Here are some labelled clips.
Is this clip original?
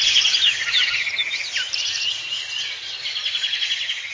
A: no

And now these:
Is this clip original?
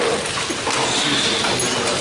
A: yes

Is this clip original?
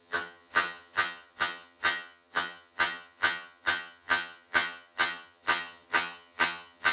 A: no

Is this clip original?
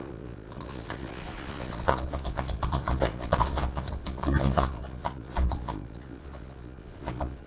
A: no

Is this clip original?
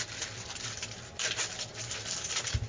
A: no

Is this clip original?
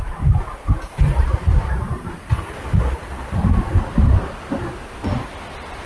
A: yes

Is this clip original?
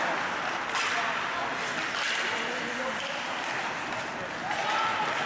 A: yes